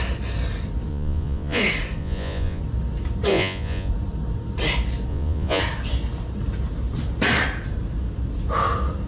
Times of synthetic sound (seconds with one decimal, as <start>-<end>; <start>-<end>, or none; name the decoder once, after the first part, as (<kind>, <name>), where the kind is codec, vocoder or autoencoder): 0.9-1.6 (vocoder, Vocos); 2.0-2.6; 3.3-3.9; 5.1-5.6